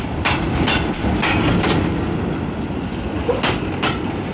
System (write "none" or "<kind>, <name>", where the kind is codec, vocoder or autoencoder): none